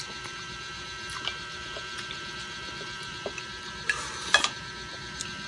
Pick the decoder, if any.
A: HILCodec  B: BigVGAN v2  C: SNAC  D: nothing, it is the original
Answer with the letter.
B